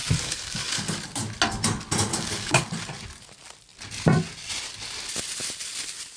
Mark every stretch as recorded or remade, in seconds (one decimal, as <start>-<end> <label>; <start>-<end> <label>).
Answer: 0.0-1.0 remade; 1.0-2.1 recorded; 2.1-2.7 remade; 2.7-6.2 recorded